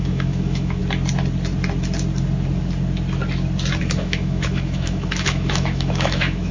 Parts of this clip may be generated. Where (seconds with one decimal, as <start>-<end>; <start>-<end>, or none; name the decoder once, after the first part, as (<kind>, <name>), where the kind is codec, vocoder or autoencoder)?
0.0-0.8 (autoencoder, DAC-VAE); 3.8-6.5